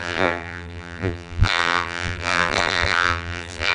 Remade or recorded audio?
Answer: remade